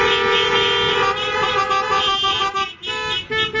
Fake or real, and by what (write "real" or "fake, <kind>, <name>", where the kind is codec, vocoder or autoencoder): real